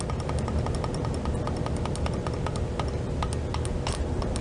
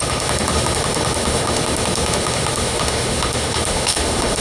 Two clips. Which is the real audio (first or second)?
first